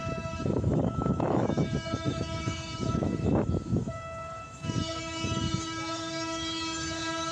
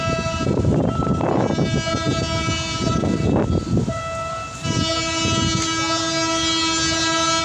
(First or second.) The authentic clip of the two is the second